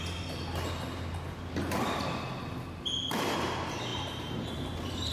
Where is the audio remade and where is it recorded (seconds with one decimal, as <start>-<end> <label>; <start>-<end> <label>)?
0.0-3.9 recorded; 3.9-5.1 remade